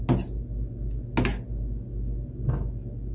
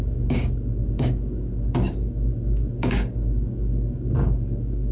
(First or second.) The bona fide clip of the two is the first